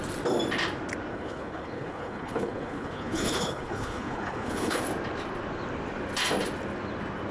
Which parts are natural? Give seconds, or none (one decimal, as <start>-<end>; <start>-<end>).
0.0-1.1; 4.8-7.3